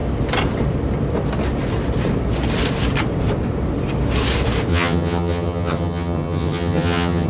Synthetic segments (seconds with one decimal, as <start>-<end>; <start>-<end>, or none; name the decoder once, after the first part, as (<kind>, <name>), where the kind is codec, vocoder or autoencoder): 4.7-7.3 (vocoder, HiFi-GAN)